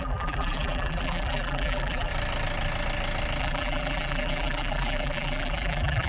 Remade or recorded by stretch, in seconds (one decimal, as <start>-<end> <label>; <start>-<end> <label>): 0.0-2.1 remade; 2.1-3.4 recorded; 3.4-6.1 remade